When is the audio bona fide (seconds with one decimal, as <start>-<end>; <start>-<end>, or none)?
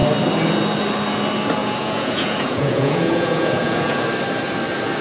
0.0-1.6; 4.0-5.0